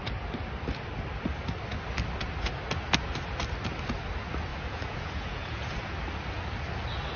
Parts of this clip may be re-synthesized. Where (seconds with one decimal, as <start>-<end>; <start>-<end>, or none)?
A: 4.5-6.0